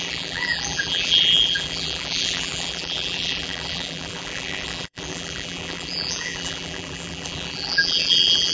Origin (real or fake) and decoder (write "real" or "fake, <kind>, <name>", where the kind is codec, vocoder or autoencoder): fake, vocoder, BigVGAN v2